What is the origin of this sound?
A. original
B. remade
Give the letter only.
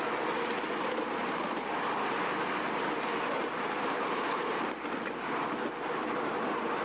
A